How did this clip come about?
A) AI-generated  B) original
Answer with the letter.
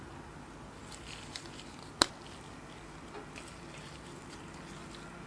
B